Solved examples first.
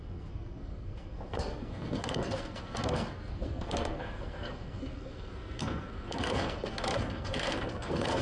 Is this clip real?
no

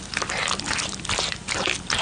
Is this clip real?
yes